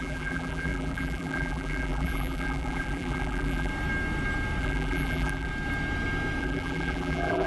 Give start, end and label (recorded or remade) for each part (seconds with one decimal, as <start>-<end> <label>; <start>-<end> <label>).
0.0-3.7 remade; 3.7-4.6 recorded; 4.6-5.5 remade; 5.5-6.4 recorded; 6.4-7.5 remade

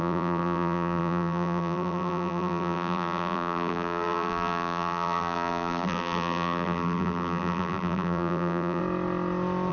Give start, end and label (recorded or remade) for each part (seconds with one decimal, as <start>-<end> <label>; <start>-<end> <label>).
0.0-8.8 remade; 8.8-9.7 recorded

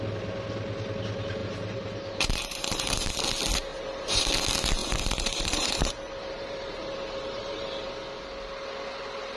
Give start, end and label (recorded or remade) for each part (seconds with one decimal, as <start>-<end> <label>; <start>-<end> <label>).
0.0-1.4 recorded; 1.4-3.1 remade; 3.1-3.7 recorded; 3.7-4.2 remade; 4.2-4.8 recorded; 4.8-7.9 remade; 7.9-9.4 recorded

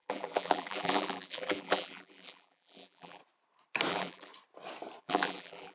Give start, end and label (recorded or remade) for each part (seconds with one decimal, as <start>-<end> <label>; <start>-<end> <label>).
0.0-3.2 remade; 3.2-3.9 recorded; 3.9-4.3 remade; 4.3-5.0 recorded; 5.0-5.7 remade